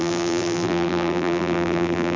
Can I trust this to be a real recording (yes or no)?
no